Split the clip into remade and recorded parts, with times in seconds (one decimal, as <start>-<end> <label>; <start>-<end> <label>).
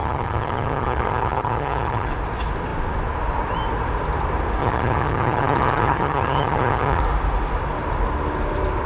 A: 0.0-2.1 remade; 2.1-4.6 recorded; 4.6-7.0 remade; 7.0-8.9 recorded